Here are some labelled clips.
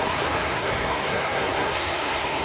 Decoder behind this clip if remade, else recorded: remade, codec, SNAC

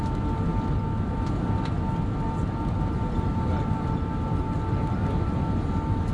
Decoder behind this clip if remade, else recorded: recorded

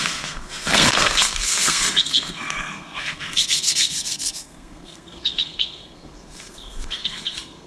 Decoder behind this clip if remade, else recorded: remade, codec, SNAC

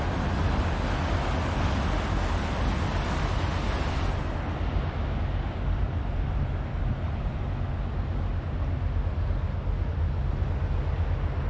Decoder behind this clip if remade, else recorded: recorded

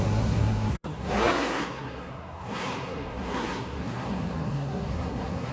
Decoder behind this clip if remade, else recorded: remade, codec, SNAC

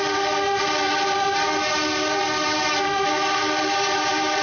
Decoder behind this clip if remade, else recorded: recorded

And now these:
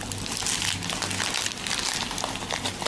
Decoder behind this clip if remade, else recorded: recorded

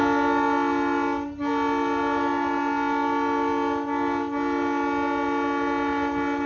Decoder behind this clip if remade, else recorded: recorded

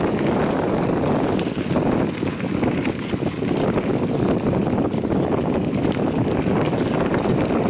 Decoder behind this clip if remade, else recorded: recorded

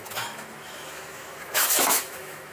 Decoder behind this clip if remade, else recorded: remade, autoencoder, DAC-VAE